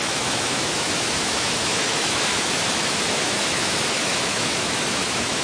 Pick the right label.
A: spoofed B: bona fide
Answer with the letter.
A